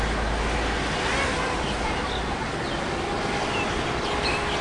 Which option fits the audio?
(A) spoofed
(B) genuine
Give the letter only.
B